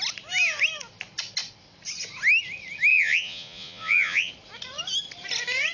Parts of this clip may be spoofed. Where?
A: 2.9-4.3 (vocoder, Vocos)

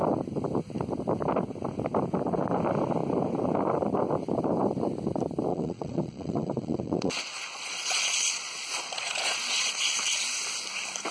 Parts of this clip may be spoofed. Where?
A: 5.5-9.9 (vocoder, Vocos)

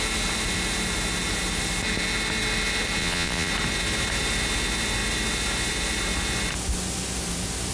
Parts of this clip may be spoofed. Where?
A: 3.0-3.5 (vocoder, Vocos)

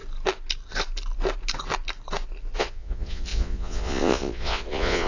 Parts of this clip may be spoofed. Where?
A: 2.6-5.1 (vocoder, Vocos)

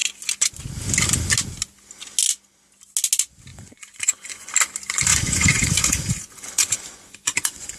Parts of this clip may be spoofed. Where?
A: 3.5-4.5 (vocoder, Vocos); 5.1-7.8

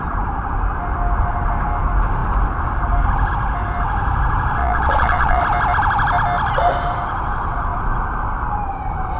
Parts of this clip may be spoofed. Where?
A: 4.6-5.4 (vocoder, Vocos)

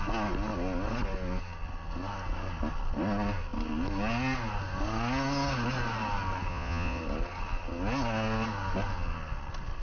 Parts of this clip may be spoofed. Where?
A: 6.5-7.0 (vocoder, Vocos)

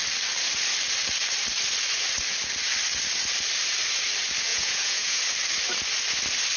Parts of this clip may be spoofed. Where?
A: 4.5-5.2 (vocoder, Vocos)